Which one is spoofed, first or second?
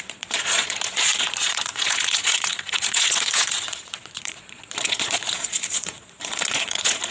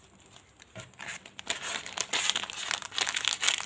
first